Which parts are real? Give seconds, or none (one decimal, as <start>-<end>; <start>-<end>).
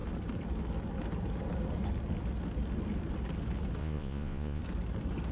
0.0-3.8; 4.6-5.3